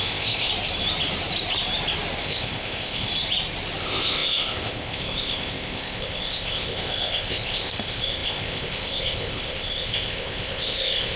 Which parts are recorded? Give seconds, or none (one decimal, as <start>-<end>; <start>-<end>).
0.5-2.2; 3.1-3.8